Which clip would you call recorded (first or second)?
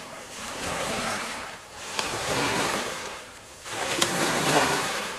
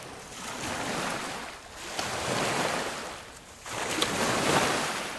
second